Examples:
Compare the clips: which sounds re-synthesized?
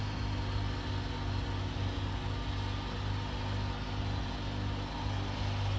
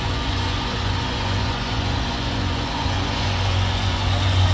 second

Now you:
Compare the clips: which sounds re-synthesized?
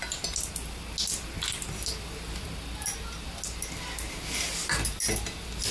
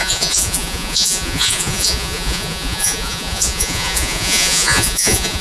second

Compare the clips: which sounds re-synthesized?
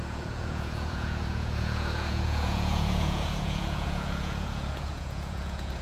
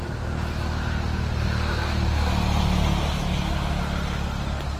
first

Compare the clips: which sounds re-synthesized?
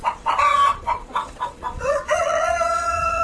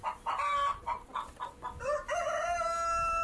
first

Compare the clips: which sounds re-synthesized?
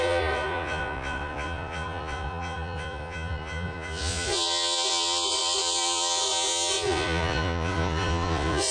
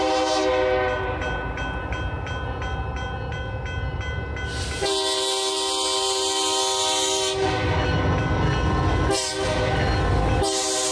first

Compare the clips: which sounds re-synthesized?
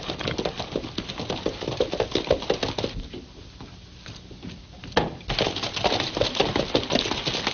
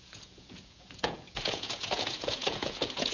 second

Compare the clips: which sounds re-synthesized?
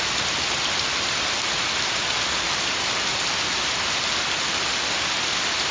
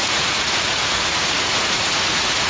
second